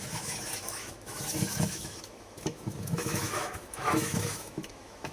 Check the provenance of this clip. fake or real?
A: fake